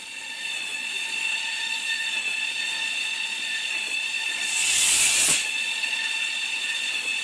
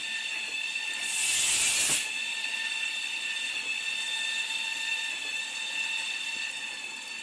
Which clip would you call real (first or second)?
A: second